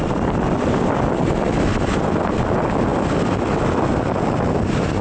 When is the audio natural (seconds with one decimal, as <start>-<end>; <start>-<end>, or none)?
0.0-5.0